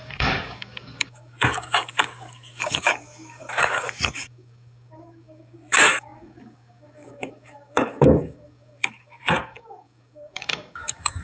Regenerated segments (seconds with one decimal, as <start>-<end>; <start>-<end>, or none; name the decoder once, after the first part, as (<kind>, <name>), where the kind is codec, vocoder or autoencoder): 0.0-11.2 (codec, DAC)